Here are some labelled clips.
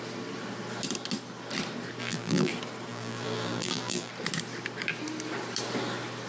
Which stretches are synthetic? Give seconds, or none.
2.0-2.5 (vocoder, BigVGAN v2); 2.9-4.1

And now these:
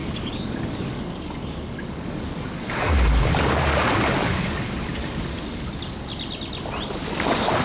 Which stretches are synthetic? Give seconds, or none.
0.0-4.6 (codec, DAC); 5.0-5.8

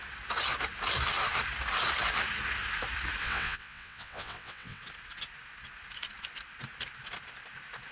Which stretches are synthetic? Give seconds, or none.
3.2-4.8 (vocoder, WaveNeXt)

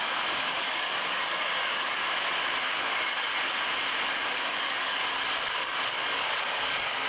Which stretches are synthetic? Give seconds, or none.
0.0-2.0 (codec, DAC); 2.6-3.3; 4.1-5.0; 5.5-7.1

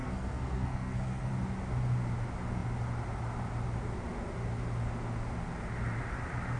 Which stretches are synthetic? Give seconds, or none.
0.0-1.3 (codec, SNAC)

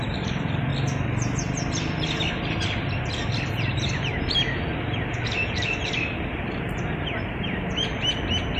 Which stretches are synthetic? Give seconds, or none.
0.0-0.7 (vocoder, BigVGAN v2); 3.5-8.6

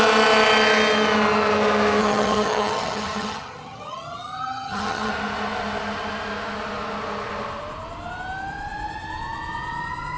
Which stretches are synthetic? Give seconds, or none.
2.0-5.1 (vocoder, HiFi-GAN)

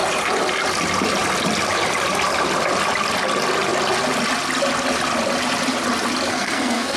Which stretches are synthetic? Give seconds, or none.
6.3-7.0 (codec, SNAC)